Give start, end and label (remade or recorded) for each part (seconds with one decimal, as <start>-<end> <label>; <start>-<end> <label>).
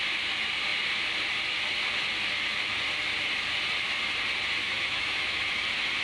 0.0-4.6 recorded; 4.6-5.5 remade; 5.5-6.0 recorded